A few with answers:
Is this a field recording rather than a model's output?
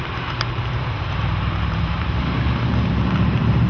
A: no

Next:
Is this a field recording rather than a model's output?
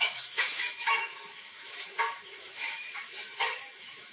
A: no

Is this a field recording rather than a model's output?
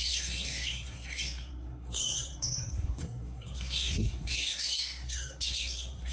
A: no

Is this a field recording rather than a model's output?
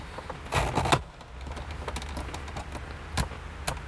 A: yes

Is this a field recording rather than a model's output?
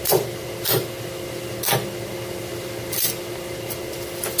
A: yes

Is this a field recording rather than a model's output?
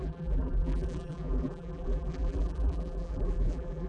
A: no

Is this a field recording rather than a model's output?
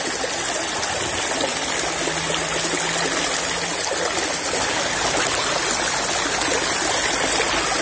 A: yes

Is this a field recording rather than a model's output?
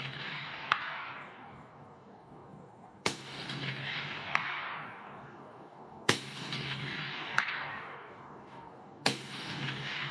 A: no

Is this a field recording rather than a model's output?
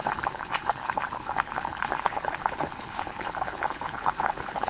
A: no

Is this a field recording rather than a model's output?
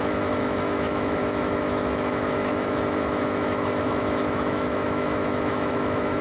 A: no